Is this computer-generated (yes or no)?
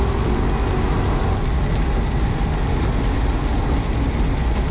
no